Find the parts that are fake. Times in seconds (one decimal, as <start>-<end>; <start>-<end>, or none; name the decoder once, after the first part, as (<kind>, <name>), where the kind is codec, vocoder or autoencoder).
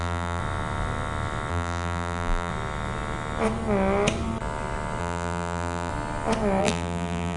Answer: 0.0-0.4 (vocoder, BigVGAN v2); 1.5-2.5; 5.0-5.9; 6.6-7.4